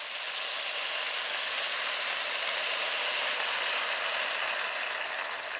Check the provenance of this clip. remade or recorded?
recorded